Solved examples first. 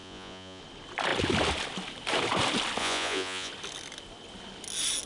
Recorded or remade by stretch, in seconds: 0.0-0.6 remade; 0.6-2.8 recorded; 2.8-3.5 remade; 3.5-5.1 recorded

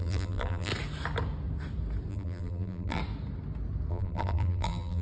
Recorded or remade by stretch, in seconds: 0.0-0.7 remade; 0.7-2.1 recorded; 2.1-3.0 remade; 3.0-3.9 recorded; 3.9-5.0 remade

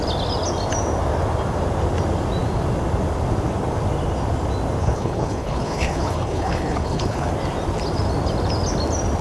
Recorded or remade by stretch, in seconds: 0.0-4.8 recorded; 4.8-7.3 remade; 7.3-9.2 recorded

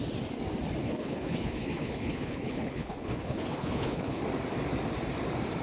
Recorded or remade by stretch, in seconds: 0.0-0.8 recorded; 0.8-4.2 remade; 4.2-5.6 recorded